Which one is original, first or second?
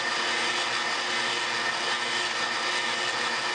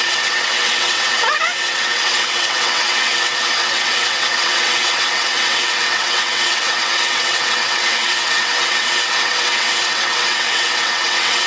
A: first